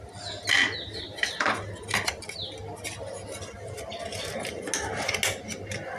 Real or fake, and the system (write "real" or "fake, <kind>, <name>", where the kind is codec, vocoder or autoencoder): real